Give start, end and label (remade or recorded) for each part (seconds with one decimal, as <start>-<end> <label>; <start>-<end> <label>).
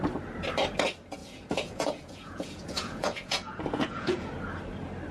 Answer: 0.0-1.2 recorded; 1.2-4.3 remade; 4.3-5.1 recorded